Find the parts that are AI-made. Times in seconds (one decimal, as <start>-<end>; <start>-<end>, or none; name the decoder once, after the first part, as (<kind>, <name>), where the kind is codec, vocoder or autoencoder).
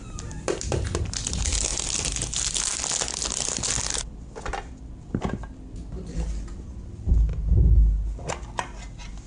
none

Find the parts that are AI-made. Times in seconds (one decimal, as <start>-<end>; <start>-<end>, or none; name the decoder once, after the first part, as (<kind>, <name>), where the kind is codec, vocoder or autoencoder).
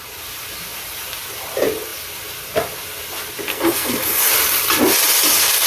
3.5-4.3 (codec, SNAC)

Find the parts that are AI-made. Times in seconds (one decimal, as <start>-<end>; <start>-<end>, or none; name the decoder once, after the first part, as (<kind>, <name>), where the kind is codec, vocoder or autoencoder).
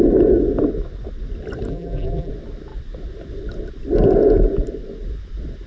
1.7-2.3 (vocoder, BigVGAN v2)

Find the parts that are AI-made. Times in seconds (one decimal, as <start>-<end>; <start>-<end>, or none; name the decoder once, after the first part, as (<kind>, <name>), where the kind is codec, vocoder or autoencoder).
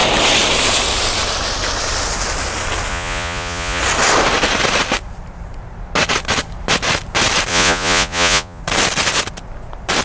2.9-3.8 (vocoder, Vocos); 7.5-8.6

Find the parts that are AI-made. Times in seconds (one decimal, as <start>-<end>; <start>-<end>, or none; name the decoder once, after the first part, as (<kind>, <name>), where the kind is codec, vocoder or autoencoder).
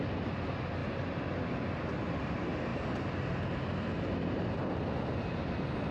none